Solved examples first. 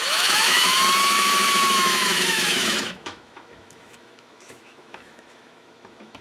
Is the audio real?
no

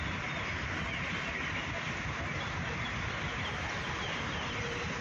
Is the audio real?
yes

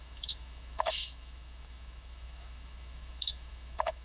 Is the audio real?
no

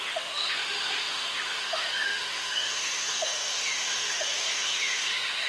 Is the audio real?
no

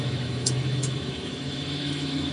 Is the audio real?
no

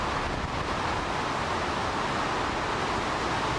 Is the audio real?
yes